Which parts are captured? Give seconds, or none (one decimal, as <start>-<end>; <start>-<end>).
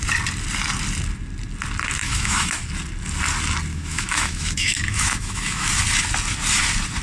0.0-2.0; 2.6-3.7; 5.7-7.0